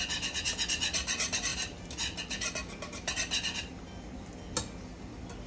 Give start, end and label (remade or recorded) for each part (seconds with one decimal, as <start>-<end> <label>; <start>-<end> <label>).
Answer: 0.0-5.5 recorded